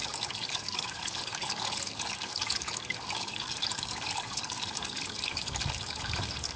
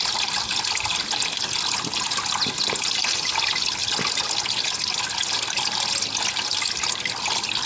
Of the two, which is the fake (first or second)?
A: first